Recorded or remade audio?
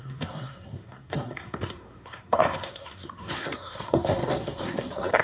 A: remade